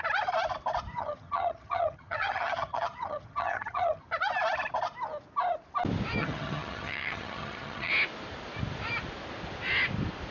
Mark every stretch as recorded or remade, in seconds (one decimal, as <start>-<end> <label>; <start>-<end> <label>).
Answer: 0.0-0.9 recorded; 0.9-4.0 remade; 4.0-6.2 recorded; 6.2-7.9 remade; 7.9-10.3 recorded